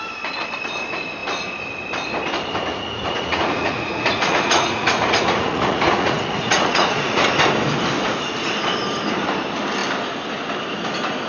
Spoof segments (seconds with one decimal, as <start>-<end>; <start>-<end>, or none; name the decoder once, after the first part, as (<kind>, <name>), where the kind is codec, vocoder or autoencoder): 2.7-7.3 (vocoder, Vocos)

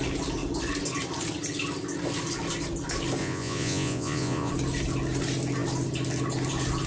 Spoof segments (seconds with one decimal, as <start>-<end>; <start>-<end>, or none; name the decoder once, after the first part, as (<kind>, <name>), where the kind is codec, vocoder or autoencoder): 3.2-4.5 (vocoder, Vocos)

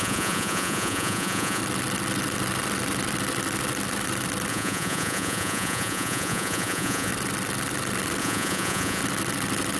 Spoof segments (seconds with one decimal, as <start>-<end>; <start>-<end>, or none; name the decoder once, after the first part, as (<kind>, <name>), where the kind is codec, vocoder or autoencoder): 0.0-1.6 (vocoder, Vocos); 4.5-7.1; 8.2-9.0

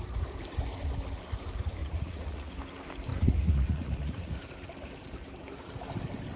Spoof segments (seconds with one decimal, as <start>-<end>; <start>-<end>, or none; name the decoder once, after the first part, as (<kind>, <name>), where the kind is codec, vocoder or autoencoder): 1.8-2.5 (vocoder, Vocos); 3.1-4.4

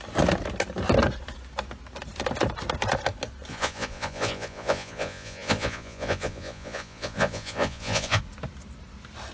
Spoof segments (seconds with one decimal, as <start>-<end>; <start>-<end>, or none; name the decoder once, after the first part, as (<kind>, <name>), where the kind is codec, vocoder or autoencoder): 3.5-8.2 (vocoder, Vocos)

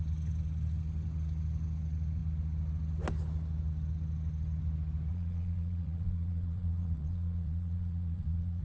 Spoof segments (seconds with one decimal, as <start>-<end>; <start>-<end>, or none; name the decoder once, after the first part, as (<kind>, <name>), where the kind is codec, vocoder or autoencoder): 5.1-8.6 (vocoder, Vocos)

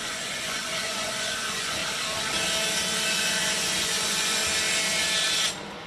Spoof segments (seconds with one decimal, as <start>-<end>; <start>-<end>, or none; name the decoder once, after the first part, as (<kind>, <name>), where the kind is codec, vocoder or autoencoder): 0.0-1.8 (vocoder, Vocos); 3.2-4.4

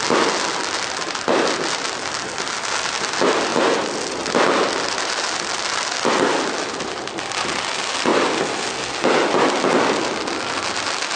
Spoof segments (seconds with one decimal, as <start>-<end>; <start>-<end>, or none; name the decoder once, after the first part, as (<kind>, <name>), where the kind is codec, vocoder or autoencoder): none